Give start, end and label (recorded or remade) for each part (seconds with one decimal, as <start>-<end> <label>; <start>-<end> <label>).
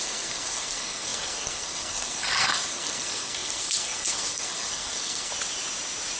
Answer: 0.0-5.3 remade; 5.3-6.2 recorded